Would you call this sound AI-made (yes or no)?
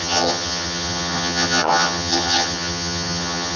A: yes